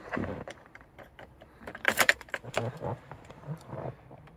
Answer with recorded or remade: remade